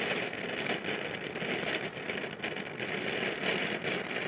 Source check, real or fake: real